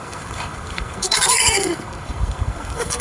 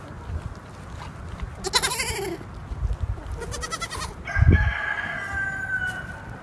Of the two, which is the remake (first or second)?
first